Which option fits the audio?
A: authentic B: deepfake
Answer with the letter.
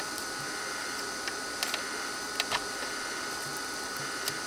A